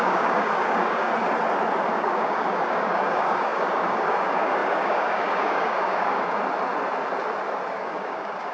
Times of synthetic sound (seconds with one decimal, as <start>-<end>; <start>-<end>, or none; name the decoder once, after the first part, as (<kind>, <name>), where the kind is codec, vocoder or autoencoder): 0.0-1.1 (codec, DAC); 1.9-6.4; 7.7-8.5